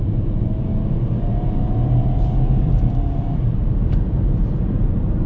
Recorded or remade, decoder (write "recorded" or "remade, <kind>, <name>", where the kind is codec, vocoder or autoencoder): remade, vocoder, BigVGAN v2